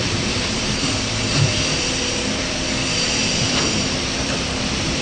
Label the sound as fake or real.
fake